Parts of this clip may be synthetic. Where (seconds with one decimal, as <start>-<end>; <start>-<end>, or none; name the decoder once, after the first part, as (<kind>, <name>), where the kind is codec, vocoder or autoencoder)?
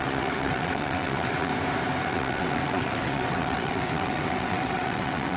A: 0.0-1.5 (vocoder, WaveNeXt); 2.0-5.4